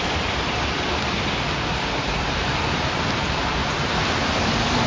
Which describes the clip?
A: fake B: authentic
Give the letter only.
A